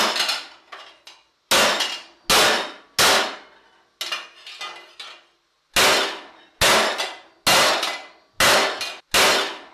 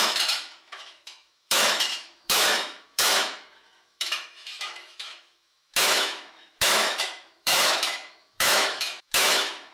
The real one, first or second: first